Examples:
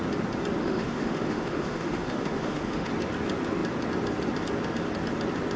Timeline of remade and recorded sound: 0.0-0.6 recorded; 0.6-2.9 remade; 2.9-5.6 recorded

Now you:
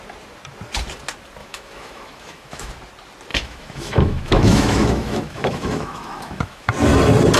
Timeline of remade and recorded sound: 0.0-1.4 recorded; 1.4-2.7 remade; 2.7-3.3 recorded; 3.3-6.7 remade; 6.7-7.4 recorded

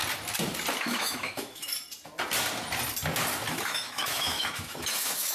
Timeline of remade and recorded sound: 0.0-0.8 recorded; 0.8-1.7 remade; 1.7-3.5 recorded; 3.5-5.3 remade

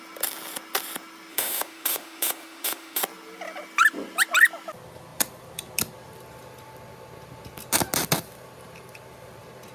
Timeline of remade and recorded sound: 0.0-1.3 recorded; 1.3-3.0 remade; 3.0-9.7 recorded